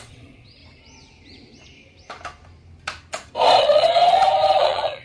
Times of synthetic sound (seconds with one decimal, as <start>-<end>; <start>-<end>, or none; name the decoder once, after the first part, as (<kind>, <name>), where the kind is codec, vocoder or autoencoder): 0.0-0.6 (vocoder, WaveNeXt); 3.6-5.0